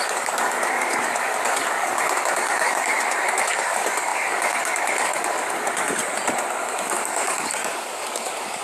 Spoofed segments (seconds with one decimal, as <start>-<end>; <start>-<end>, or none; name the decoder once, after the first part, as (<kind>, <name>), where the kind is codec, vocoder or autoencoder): 0.0-2.9 (codec, DAC); 3.4-6.0; 6.6-8.6